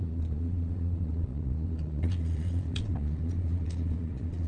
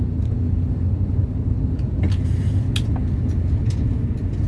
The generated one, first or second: first